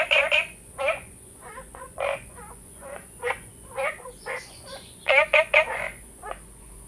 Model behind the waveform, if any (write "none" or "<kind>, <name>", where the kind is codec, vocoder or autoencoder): vocoder, Vocos